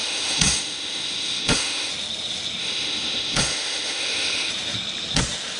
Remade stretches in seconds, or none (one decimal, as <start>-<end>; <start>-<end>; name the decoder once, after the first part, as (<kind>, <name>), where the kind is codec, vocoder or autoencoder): 0.0-1.9 (autoencoder, DAC-VAE); 2.6-4.5